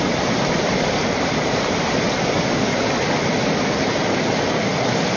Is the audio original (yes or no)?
yes